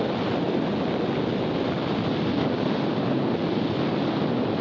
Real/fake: real